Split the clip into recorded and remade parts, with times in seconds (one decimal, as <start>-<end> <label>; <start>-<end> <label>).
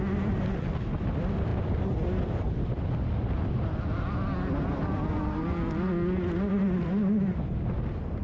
0.0-8.2 recorded